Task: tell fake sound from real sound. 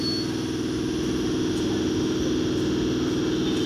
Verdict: real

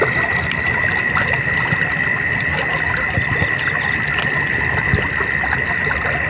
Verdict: real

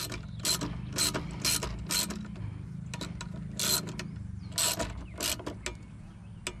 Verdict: real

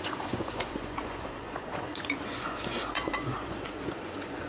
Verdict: fake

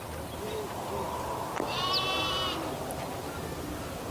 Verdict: real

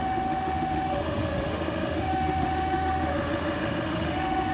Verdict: fake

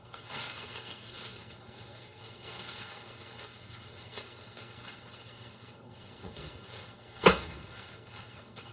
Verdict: fake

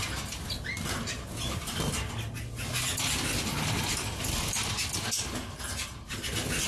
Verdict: real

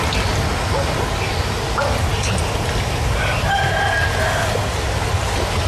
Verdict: real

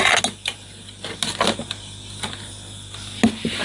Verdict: real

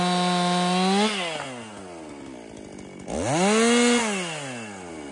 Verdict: real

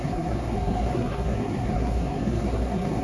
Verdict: fake